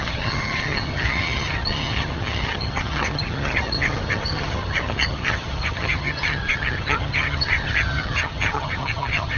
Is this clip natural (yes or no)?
no